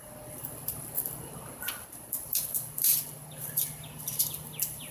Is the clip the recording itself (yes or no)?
no